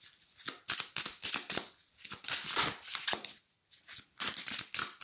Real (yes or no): yes